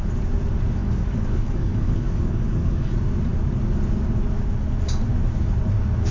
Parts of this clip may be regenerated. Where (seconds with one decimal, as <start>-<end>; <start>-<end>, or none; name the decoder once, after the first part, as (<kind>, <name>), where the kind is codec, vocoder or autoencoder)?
0.8-2.9 (codec, DAC)